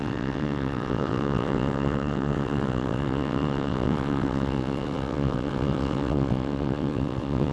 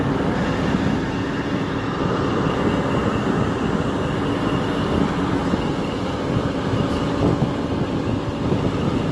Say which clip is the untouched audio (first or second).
second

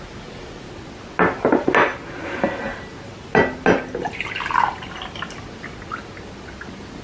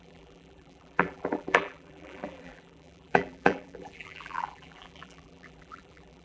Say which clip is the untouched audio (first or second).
first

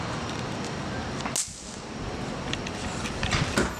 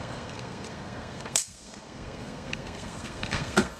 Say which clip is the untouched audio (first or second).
first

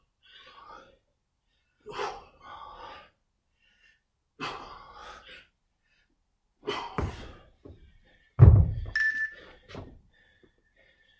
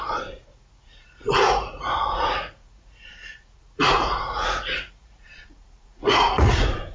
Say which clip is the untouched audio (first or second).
first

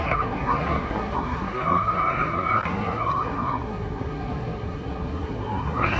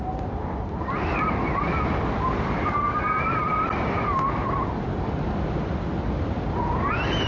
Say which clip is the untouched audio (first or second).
second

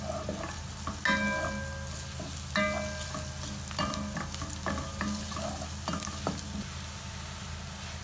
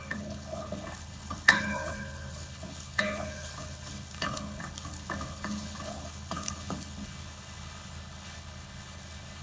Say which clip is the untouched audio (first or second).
first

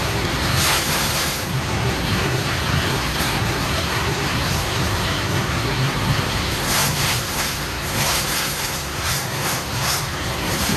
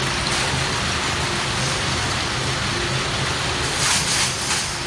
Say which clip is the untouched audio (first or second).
second